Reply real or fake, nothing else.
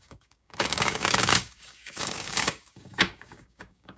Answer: fake